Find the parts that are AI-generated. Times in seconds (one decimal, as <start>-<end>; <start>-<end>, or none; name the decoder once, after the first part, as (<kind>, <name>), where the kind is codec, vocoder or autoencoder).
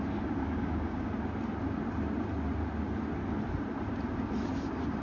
0.4-1.1 (codec, DAC)